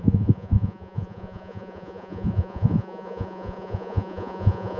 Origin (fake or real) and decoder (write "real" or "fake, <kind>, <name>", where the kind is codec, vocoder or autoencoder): fake, vocoder, Vocos